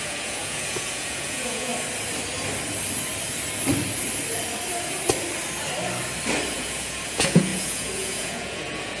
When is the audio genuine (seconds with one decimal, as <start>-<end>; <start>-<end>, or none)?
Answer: 1.7-6.5